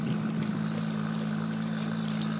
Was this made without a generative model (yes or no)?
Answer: yes